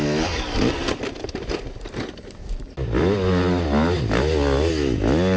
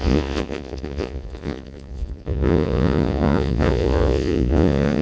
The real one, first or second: first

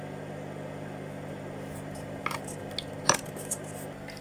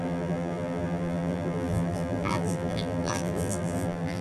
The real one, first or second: first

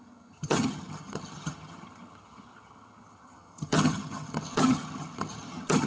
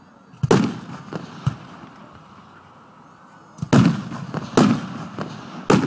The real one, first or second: second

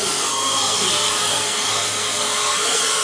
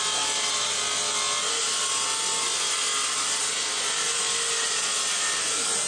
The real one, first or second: second